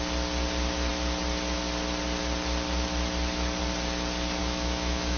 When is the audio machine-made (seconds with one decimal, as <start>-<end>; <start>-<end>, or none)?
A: 4.4-5.2